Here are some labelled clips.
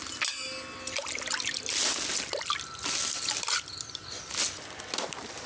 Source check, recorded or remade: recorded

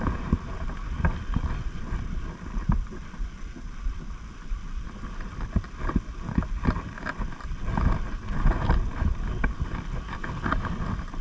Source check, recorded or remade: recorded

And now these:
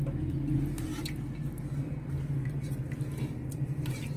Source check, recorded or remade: recorded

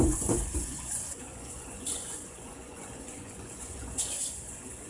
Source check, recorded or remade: remade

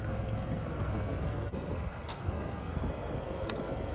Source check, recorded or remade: remade